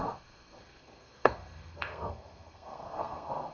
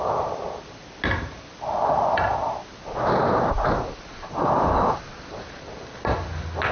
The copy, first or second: first